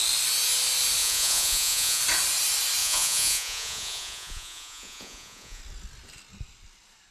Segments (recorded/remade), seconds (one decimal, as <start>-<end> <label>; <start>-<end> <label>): 0.0-1.0 recorded; 1.0-2.0 remade; 2.0-2.8 recorded; 2.8-5.6 remade; 5.6-7.1 recorded